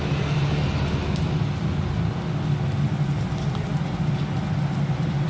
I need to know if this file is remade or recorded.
recorded